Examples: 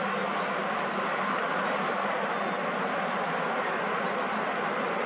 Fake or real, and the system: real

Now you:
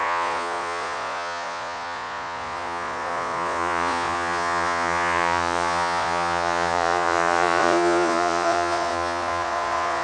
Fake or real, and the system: fake, vocoder, Vocos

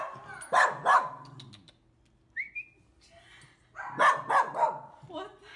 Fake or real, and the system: real